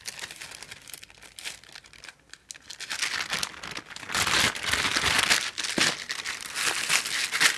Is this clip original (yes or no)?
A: yes